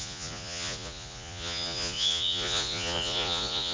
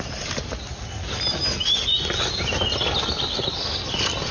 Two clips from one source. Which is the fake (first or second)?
first